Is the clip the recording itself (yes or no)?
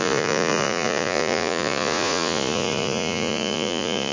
no